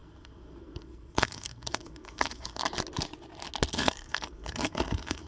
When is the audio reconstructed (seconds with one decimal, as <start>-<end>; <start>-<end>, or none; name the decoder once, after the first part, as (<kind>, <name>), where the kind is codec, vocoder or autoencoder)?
0.0-2.6 (codec, SNAC); 3.7-5.3